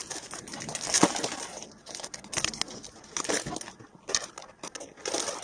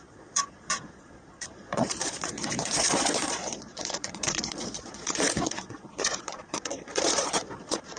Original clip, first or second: first